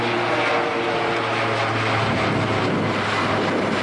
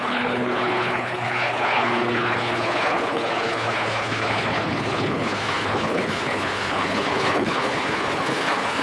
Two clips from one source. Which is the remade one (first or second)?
second